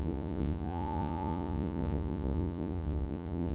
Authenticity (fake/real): fake